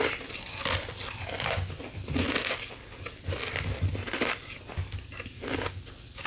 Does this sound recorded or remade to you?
recorded